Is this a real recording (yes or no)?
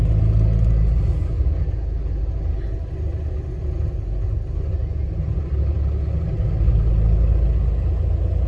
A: yes